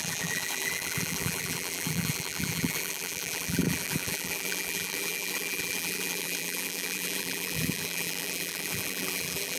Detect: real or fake fake